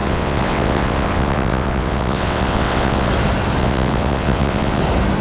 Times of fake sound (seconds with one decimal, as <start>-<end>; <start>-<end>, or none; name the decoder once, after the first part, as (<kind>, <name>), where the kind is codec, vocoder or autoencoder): 0.0-3.1 (vocoder, WaveNeXt); 3.6-4.8